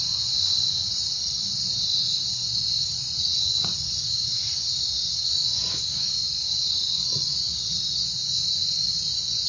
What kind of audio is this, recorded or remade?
remade